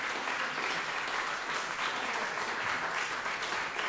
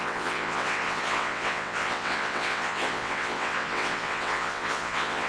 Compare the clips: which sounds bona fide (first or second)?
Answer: first